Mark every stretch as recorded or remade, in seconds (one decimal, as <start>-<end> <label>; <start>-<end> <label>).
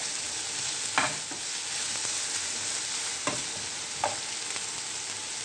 0.0-5.4 recorded